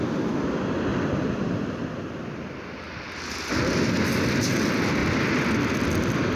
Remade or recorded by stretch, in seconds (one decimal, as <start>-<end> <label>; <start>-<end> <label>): 0.0-0.9 recorded; 0.9-3.0 remade; 3.0-6.4 recorded